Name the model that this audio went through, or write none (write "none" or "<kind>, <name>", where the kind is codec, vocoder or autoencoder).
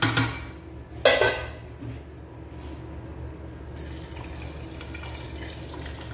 none